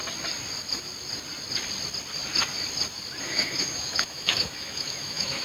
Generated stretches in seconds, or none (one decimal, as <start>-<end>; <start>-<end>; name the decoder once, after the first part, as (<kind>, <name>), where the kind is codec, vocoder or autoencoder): 3.2-5.4 (autoencoder, DAC-VAE)